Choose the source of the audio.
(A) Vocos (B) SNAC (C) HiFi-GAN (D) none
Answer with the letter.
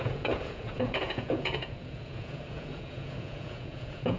A